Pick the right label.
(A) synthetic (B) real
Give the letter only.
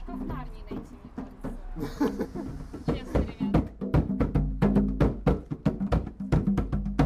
B